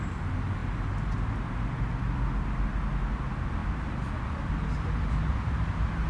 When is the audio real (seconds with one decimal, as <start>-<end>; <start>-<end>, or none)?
0.0-6.1